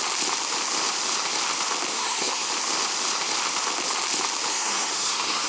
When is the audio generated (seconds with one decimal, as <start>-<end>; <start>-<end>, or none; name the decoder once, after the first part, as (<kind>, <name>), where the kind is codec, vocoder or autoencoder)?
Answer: 1.9-2.5 (codec, SNAC); 4.5-5.5